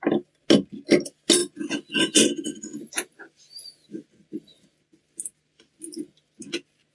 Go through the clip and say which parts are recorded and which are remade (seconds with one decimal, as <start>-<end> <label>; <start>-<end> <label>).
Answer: 0.0-6.9 recorded